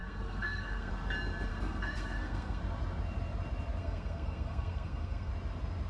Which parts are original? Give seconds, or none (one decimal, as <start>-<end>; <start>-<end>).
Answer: 0.9-1.5; 2.6-3.8; 5.3-5.9